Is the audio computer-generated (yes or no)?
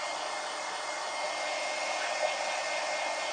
no